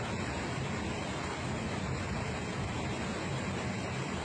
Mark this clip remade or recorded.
remade